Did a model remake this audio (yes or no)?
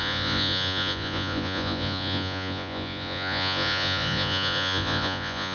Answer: yes